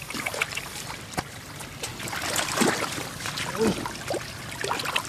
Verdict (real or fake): real